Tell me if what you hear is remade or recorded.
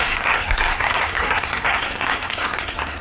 remade